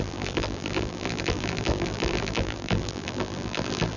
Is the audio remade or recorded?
remade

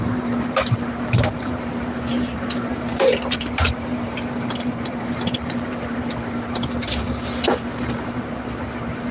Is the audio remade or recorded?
remade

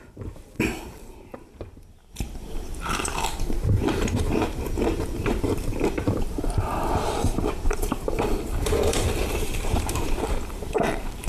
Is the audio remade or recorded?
remade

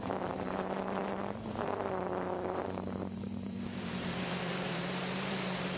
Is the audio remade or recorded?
remade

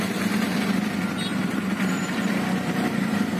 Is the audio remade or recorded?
remade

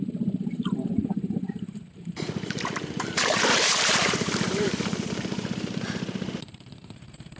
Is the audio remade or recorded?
remade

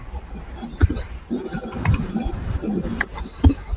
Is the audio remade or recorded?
remade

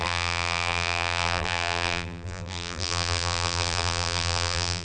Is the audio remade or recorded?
remade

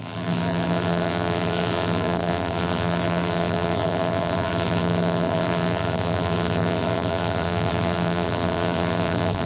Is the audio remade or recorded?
remade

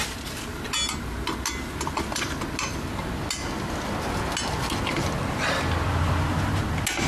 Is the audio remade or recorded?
recorded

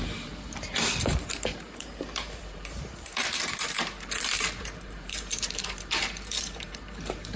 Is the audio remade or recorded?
remade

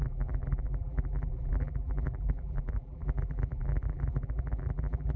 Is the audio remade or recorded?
remade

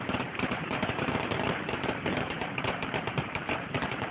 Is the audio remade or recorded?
remade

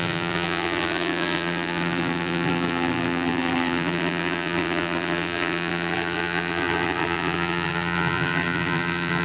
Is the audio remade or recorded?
remade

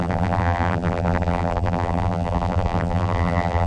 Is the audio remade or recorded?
remade